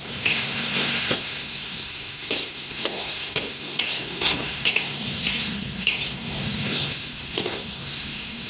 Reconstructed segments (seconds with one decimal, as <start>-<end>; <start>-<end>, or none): 0.0-8.5